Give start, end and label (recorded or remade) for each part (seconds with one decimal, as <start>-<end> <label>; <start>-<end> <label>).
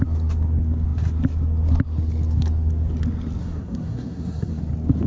0.0-3.4 recorded; 3.4-4.6 remade; 4.6-5.1 recorded